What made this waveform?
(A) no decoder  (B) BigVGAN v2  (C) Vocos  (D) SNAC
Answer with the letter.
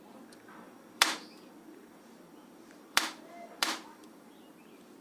B